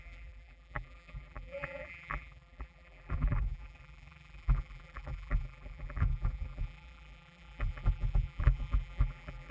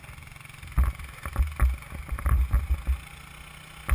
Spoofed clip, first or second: first